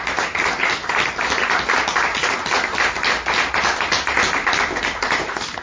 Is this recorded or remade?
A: recorded